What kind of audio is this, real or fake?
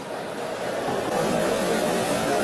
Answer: real